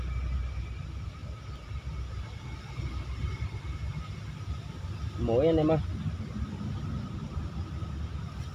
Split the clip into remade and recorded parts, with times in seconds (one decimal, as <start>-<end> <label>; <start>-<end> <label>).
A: 0.0-1.2 recorded; 1.2-3.3 remade; 3.3-8.5 recorded